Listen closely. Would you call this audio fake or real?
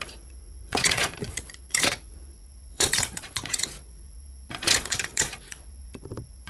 fake